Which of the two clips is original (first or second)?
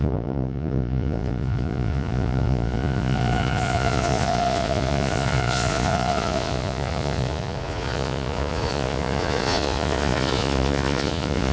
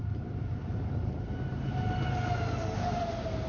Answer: second